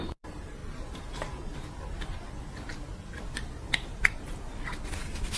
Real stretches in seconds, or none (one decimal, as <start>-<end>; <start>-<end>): 0.6-3.3; 4.5-5.4

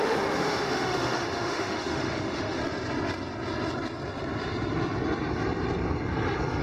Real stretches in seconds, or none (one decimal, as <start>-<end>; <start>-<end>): 2.6-6.6

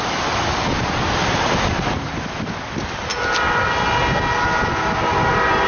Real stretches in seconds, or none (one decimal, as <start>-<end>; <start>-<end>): 0.0-5.7

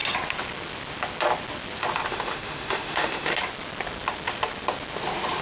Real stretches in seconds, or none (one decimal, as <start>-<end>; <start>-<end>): 0.0-2.1; 3.3-5.4

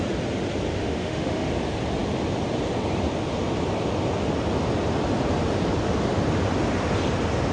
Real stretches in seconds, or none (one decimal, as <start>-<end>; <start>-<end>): 0.0-0.8; 1.5-7.5

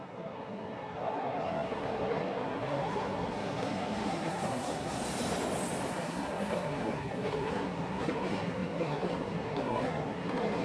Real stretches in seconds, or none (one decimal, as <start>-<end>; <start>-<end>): 5.0-5.9

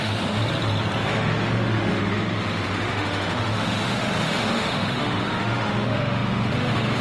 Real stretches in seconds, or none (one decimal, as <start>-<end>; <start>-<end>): 0.4-1.0

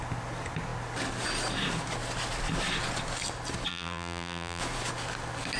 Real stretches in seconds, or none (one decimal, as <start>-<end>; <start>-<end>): 0.0-3.7; 4.6-5.6